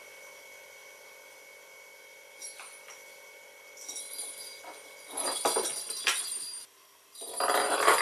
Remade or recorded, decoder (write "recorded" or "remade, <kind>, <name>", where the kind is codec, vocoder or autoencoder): recorded